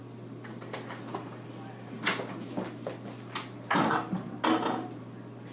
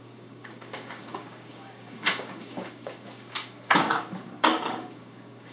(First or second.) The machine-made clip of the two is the second